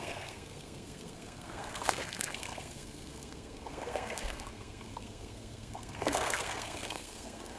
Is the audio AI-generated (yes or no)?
yes